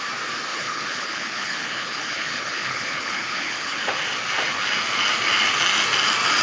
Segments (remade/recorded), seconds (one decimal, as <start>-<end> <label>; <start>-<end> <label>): 0.0-0.5 recorded; 0.5-3.8 remade; 3.8-6.4 recorded